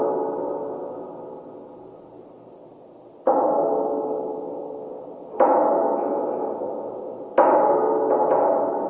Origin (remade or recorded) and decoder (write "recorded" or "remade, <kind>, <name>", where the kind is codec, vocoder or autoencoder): recorded